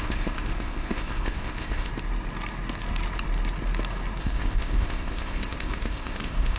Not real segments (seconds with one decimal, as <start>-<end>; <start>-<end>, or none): 0.0-1.9; 4.2-6.6